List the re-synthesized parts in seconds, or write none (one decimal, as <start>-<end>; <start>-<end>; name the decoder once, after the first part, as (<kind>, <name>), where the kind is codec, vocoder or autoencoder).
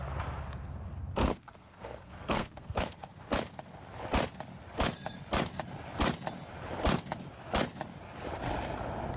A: 1.2-3.1 (codec, SNAC)